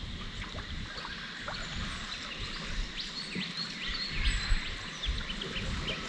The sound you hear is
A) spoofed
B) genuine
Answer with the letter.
B